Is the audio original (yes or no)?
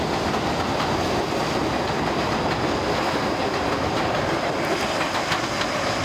yes